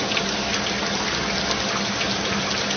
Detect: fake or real real